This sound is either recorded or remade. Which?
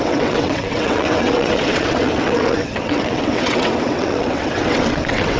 remade